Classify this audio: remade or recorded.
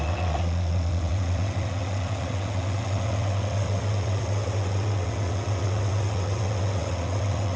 remade